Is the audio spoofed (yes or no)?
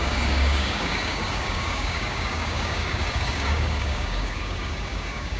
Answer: yes